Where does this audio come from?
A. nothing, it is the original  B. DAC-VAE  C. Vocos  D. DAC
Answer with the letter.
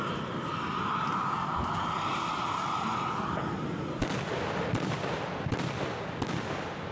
A